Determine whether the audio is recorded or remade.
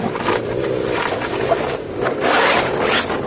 recorded